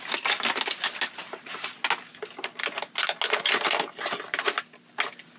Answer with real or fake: real